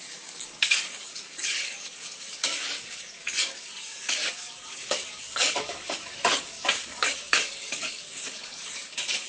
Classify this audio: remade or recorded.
remade